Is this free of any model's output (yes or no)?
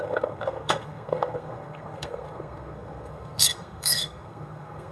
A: no